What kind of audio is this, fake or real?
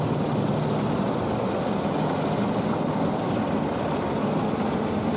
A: real